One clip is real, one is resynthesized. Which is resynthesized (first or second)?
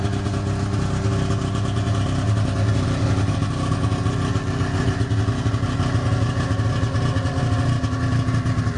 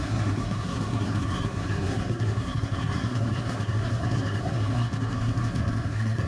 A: second